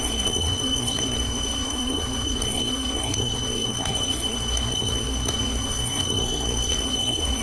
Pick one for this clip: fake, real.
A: fake